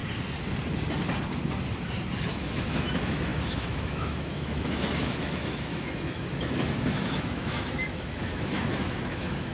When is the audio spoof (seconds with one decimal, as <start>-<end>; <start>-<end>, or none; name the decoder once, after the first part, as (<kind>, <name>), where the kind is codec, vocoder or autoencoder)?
2.3-9.5 (autoencoder, DAC-VAE)